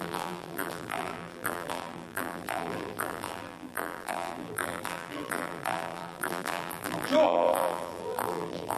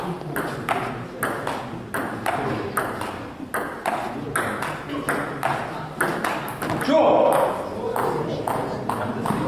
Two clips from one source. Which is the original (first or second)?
second